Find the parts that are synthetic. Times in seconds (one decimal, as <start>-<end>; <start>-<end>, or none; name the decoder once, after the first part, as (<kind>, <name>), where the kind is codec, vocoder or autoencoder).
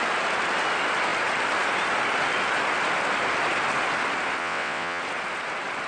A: 4.4-5.0 (vocoder, WaveNeXt)